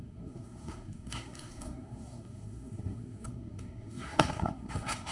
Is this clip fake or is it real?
fake